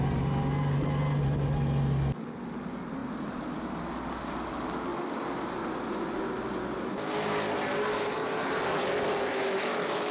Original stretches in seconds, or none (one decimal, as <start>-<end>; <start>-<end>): 0.0-9.3